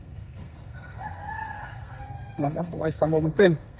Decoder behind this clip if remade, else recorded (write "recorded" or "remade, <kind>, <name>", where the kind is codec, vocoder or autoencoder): remade, codec, SNAC